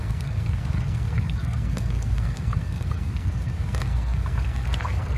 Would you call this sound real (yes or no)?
no